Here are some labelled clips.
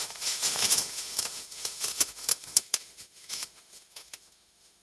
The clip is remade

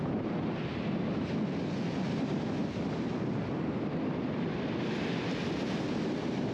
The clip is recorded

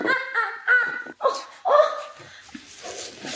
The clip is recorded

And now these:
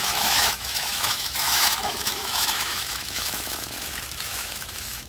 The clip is remade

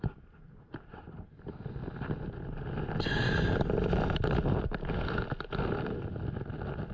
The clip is recorded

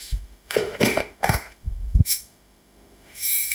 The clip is remade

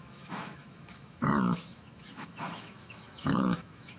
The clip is remade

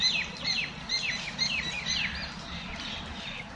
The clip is recorded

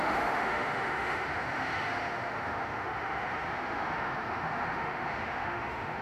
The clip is remade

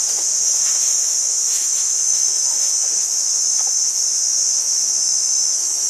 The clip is remade